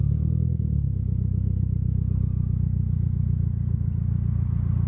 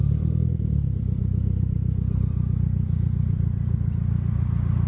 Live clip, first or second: first